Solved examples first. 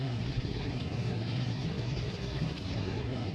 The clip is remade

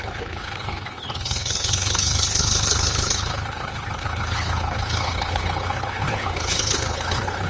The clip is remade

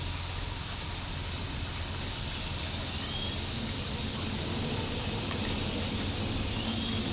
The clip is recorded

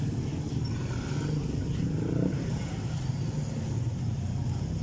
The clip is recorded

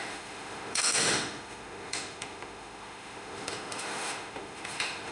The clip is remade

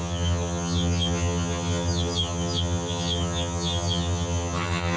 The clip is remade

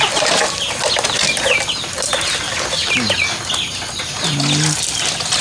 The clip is recorded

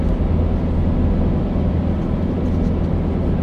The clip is recorded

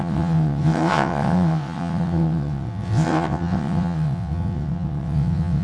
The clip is remade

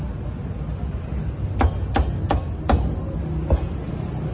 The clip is recorded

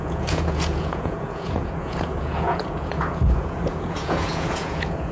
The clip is remade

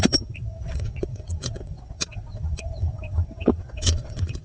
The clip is remade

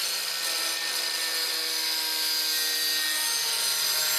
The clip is recorded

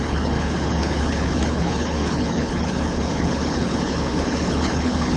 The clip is remade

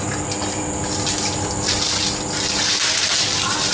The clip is recorded